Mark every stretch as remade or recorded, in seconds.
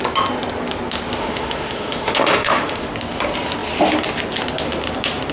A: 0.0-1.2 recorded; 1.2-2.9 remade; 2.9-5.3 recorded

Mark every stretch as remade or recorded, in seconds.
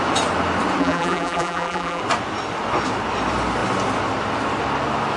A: 0.0-0.8 recorded; 0.8-2.0 remade; 2.0-5.2 recorded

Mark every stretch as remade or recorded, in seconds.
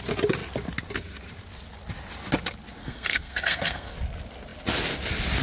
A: 0.0-2.8 recorded; 2.8-3.9 remade; 3.9-5.4 recorded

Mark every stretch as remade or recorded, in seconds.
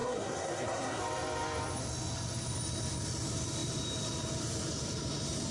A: 0.0-1.0 remade; 1.0-5.5 recorded